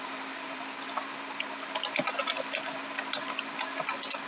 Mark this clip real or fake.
real